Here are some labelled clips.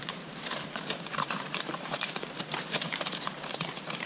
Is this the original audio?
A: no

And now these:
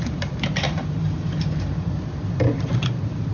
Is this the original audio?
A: no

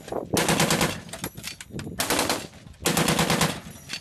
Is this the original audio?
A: yes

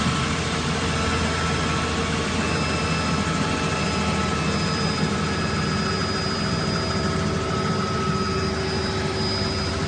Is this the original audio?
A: yes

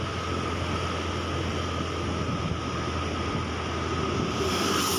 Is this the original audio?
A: yes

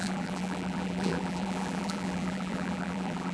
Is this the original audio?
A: no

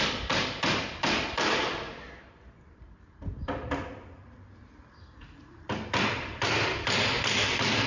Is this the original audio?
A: no